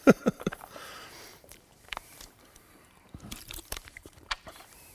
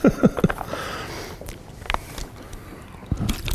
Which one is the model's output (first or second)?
first